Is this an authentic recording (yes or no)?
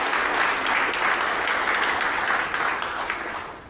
yes